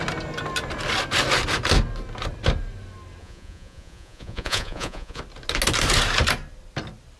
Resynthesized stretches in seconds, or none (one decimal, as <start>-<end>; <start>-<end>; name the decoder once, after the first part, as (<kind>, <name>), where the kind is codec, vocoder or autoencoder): 3.2-5.2 (vocoder, Vocos)

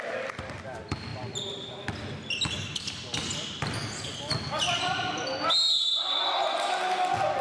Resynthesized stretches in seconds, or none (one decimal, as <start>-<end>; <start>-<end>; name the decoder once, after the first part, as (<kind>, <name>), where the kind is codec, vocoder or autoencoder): none

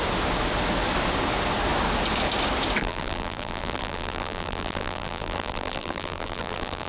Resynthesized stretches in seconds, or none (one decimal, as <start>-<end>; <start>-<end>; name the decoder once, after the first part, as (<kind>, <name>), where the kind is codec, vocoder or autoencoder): 2.8-6.9 (vocoder, BigVGAN v2)

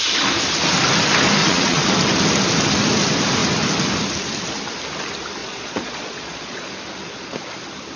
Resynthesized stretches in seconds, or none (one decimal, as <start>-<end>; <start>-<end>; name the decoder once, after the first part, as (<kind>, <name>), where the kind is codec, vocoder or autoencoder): 1.4-1.9 (vocoder, Vocos); 5.4-6.7